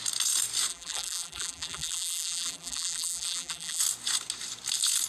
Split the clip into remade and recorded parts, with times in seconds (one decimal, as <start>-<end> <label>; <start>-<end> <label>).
0.0-0.7 recorded; 0.7-3.8 remade; 3.8-5.1 recorded